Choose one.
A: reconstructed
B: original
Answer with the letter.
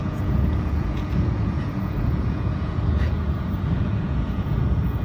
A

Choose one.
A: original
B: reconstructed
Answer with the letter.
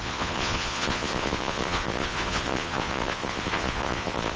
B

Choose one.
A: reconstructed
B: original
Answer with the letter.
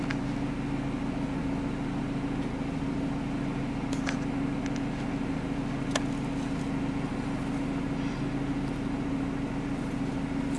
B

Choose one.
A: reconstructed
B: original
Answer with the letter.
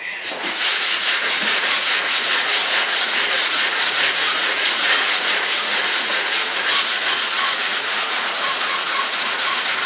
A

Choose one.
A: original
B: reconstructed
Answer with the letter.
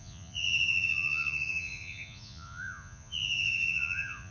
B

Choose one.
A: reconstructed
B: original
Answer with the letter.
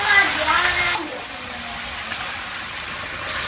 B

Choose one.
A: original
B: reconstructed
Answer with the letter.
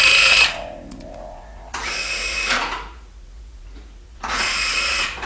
B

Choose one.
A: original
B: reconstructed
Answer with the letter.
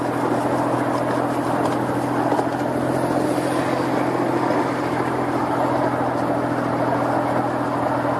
A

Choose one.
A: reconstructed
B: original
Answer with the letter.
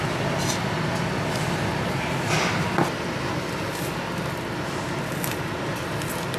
B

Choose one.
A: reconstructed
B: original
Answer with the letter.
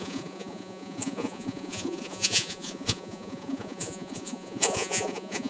A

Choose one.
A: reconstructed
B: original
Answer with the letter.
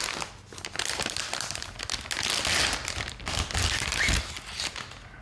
B